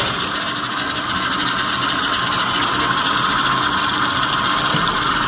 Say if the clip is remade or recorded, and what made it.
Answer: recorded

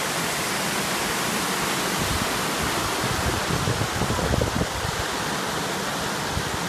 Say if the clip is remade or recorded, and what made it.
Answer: recorded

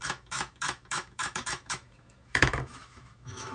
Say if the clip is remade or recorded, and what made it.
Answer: remade, autoencoder, DAC-VAE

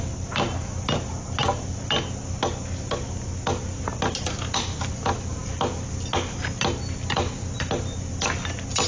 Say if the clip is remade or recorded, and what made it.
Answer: recorded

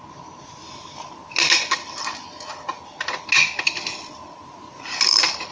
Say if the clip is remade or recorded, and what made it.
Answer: recorded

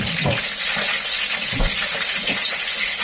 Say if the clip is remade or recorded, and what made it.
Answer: recorded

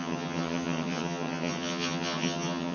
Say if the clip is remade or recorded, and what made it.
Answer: remade, vocoder, HiFi-GAN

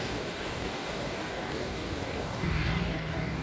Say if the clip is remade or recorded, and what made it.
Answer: remade, codec, DAC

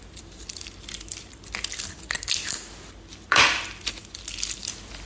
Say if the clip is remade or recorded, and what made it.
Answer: recorded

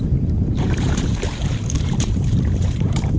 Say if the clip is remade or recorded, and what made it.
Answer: remade, vocoder, BigVGAN v2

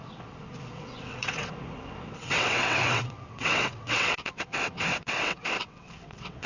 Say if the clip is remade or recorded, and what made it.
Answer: remade, vocoder, WaveNeXt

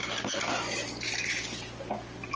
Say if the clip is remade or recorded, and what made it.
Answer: recorded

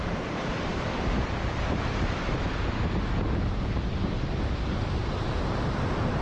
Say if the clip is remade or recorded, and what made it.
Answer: remade, vocoder, BigVGAN v2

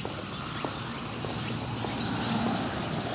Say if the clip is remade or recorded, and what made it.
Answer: recorded